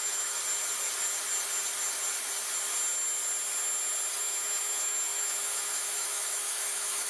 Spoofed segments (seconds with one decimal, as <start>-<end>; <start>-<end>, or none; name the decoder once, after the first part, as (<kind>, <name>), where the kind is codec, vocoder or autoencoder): 0.0-0.4 (autoencoder, DAC-VAE); 4.2-7.1